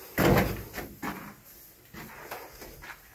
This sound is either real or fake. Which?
real